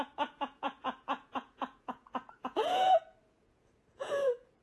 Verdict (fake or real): fake